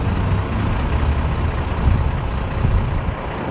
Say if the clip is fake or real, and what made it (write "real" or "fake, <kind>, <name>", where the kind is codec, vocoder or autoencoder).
real